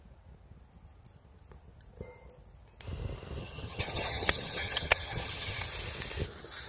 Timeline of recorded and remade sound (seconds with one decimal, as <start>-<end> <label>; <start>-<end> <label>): 0.0-3.4 recorded; 3.4-5.7 remade; 5.7-6.7 recorded